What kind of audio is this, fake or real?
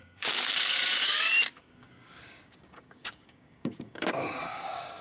fake